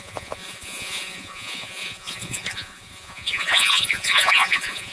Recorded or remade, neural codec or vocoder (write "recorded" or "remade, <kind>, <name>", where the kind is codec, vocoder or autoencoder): remade, vocoder, Vocos